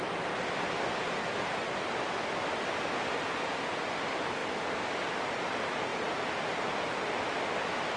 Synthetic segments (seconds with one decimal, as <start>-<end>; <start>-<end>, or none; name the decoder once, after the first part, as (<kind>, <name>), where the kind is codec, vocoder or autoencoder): none